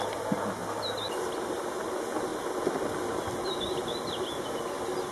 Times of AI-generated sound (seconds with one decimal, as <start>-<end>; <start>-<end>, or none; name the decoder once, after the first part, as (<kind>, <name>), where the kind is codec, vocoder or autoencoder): 2.3-4.3 (vocoder, BigVGAN v2)